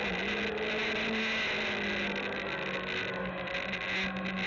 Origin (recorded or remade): recorded